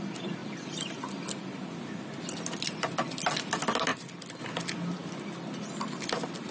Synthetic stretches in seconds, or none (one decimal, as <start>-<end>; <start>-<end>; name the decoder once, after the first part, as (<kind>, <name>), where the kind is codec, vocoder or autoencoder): 0.4-1.4 (vocoder, BigVGAN v2); 3.9-4.4; 5.0-5.6